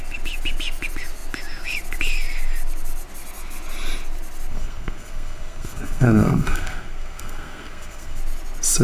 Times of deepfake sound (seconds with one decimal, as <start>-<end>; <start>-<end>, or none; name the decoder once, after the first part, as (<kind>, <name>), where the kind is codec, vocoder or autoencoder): 4.5-8.2 (codec, SNAC)